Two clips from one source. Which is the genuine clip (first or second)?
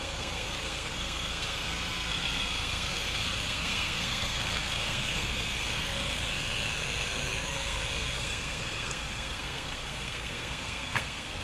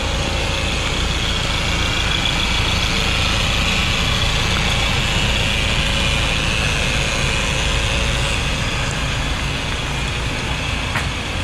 second